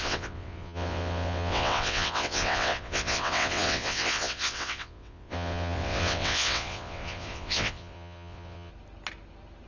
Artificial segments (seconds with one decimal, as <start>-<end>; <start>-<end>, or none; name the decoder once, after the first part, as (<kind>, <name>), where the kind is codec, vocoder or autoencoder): 0.0-8.7 (vocoder, WaveNeXt)